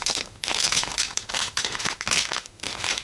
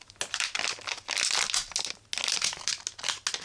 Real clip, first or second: second